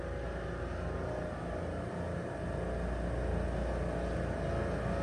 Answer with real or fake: real